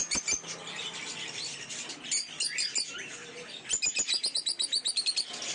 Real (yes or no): yes